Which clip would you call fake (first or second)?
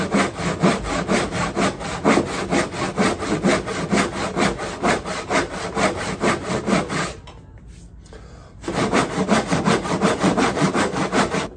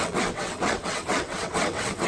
second